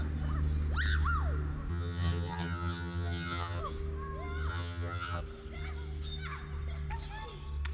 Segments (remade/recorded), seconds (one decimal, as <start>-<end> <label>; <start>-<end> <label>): 0.0-1.7 recorded; 1.7-3.6 remade; 3.6-4.5 recorded; 4.5-5.2 remade; 5.2-7.7 recorded